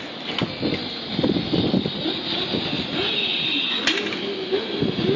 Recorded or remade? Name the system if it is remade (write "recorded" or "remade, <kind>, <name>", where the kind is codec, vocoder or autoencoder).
recorded